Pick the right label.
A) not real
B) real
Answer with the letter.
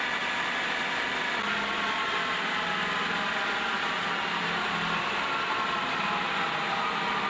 B